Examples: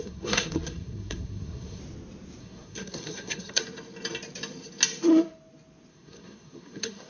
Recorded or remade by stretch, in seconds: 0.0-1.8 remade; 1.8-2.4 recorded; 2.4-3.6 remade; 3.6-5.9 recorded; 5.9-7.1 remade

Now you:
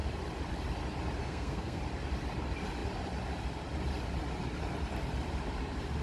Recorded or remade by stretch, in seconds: 0.0-1.2 recorded; 1.2-1.8 remade; 1.8-6.0 recorded

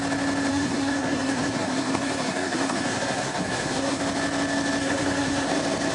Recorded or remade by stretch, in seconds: 0.0-0.5 recorded; 0.5-4.0 remade; 4.0-4.8 recorded; 4.8-5.5 remade; 5.5-5.9 recorded

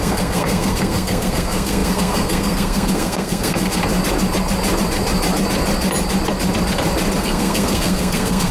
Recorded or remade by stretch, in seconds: 0.0-3.8 remade; 3.8-7.2 recorded; 7.2-8.5 remade

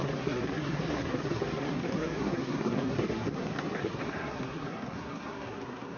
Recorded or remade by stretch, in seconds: 0.0-6.0 remade